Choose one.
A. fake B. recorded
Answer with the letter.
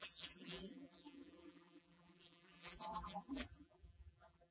A